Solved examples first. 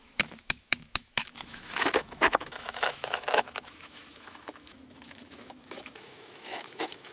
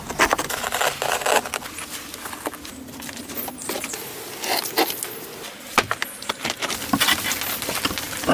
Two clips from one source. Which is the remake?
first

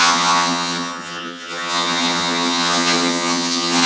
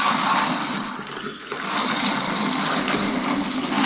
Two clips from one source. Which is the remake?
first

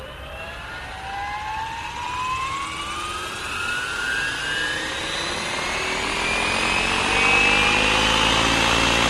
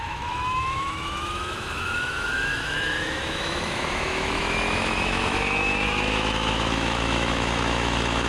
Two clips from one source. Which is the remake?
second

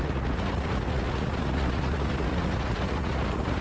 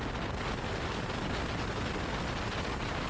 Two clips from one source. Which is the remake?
first